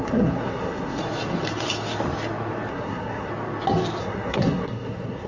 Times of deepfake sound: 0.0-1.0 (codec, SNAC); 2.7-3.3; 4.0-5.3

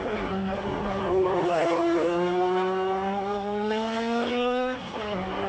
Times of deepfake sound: 0.0-5.5 (codec, SNAC)